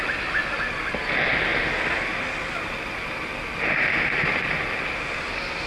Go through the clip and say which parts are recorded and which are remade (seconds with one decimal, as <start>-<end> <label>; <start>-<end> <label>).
0.0-5.7 recorded